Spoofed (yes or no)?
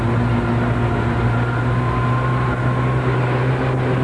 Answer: no